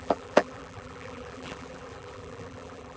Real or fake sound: fake